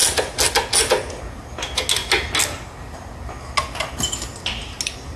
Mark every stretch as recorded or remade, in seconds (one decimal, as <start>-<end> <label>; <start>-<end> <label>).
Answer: 0.0-5.2 recorded